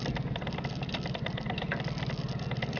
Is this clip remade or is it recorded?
recorded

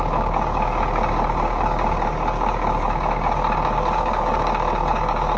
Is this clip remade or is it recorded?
remade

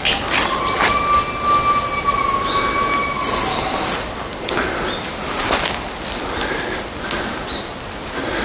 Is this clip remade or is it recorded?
recorded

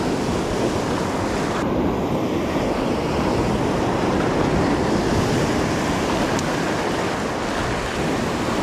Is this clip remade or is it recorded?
recorded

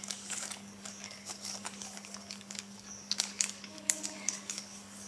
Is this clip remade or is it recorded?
remade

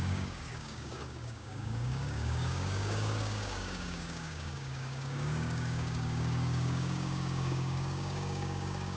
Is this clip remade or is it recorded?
remade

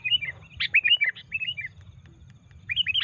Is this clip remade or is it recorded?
recorded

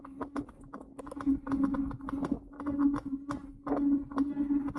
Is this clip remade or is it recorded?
recorded